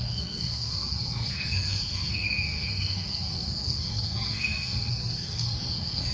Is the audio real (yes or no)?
no